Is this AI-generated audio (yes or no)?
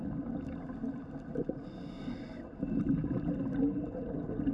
no